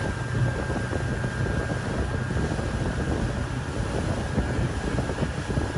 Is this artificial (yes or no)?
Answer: no